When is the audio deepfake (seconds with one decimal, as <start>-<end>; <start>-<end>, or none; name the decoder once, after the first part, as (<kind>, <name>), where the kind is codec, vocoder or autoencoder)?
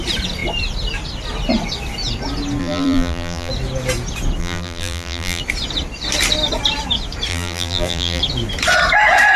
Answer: 2.6-3.5 (vocoder, BigVGAN v2); 4.4-5.4; 7.3-8.2